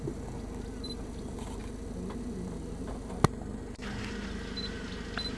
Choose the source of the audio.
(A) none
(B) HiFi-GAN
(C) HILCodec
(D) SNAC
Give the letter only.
A